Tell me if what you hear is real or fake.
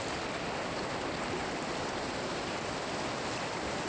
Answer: fake